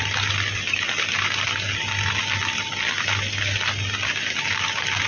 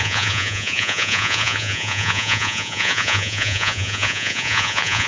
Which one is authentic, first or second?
first